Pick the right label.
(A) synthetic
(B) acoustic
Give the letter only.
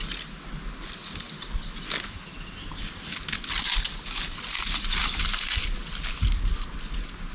B